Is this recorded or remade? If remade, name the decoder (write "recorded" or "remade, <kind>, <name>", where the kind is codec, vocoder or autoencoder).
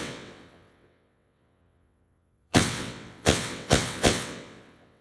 remade, vocoder, WaveNeXt